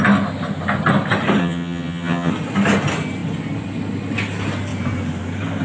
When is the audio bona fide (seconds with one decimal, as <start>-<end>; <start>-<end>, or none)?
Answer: 0.0-1.4; 2.3-5.6